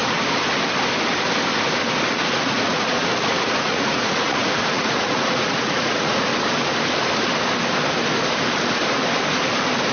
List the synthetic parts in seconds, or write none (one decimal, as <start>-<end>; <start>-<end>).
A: 2.1-6.3